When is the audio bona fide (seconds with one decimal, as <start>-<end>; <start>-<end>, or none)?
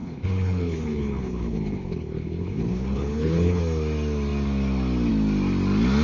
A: 3.6-6.0